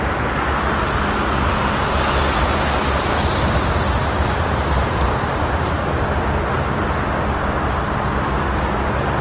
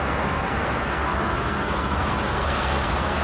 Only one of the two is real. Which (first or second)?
first